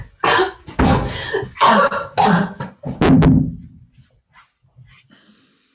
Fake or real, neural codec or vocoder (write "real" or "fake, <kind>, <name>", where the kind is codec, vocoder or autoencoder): real